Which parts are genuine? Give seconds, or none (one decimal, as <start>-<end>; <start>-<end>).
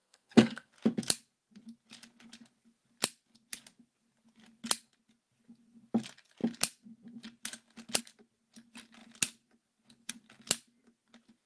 0.7-11.5